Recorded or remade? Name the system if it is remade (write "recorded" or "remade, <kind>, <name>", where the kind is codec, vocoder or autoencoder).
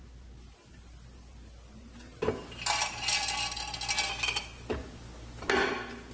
recorded